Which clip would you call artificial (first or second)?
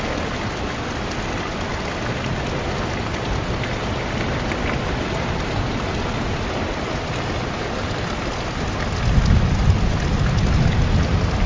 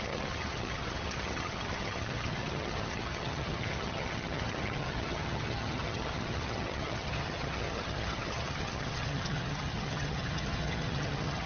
second